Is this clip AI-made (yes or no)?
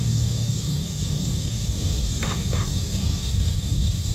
yes